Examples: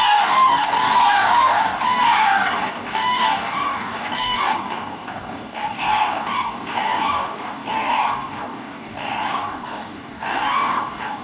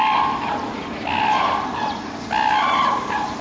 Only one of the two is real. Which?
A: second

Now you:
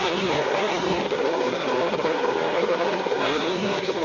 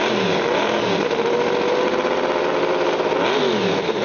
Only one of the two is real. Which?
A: second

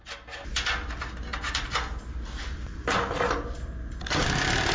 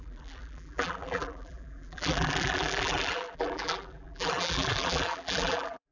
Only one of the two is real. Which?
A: first